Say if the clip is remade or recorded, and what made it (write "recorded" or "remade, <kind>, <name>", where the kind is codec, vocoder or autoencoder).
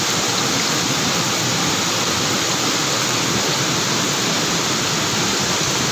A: recorded